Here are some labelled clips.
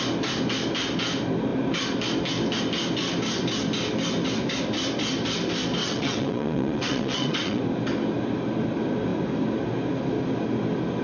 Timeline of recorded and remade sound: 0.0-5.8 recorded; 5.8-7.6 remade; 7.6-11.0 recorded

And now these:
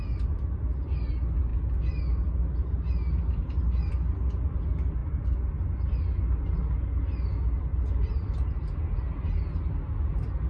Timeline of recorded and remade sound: 0.0-10.5 recorded

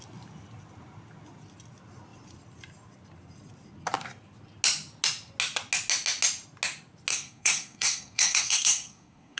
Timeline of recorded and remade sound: 0.0-7.1 recorded; 7.1-9.4 remade

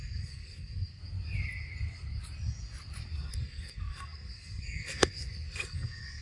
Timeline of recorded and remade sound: 0.0-1.0 remade; 1.0-3.3 recorded; 3.3-6.2 remade